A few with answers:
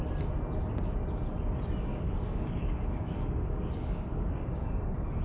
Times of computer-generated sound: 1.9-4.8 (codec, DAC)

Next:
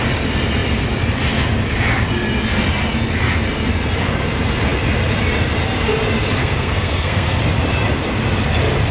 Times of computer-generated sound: 6.4-7.4 (codec, SNAC)

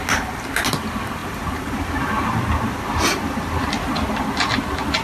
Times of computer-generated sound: 1.2-4.2 (vocoder, BigVGAN v2)

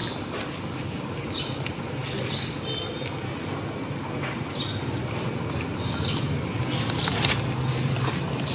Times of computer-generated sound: none

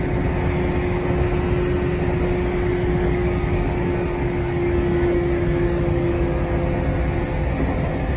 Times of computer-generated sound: 2.7-6.3 (codec, DAC)

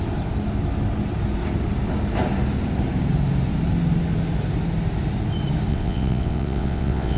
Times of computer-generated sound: 5.7-7.2 (vocoder, WaveNeXt)

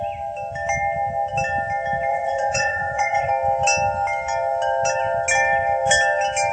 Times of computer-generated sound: 2.1-3.3 (vocoder, Vocos)